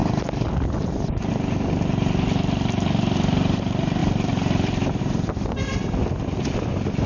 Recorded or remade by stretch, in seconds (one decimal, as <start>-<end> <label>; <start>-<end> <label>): 0.0-4.0 recorded; 4.0-5.0 remade; 5.0-7.1 recorded